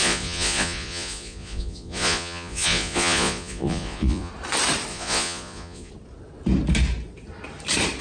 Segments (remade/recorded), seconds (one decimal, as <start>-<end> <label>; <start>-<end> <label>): 0.0-4.3 remade; 4.3-4.9 recorded; 4.9-5.9 remade; 5.9-8.0 recorded